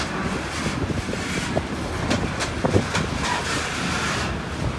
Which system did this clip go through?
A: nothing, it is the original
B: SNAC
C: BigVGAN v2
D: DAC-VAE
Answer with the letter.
A